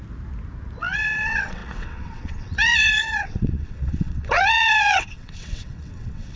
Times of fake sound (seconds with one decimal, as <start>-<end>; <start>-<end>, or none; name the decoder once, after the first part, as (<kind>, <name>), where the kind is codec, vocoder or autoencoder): 0.8-6.4 (vocoder, WaveNeXt)